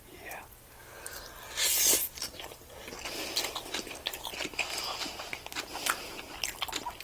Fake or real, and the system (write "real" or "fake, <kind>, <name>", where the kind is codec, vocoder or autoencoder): real